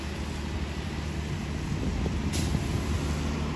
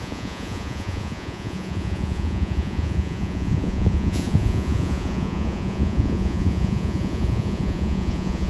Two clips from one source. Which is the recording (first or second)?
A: first